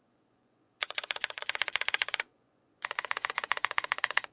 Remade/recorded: remade